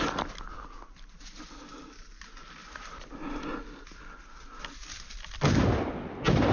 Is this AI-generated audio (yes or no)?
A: no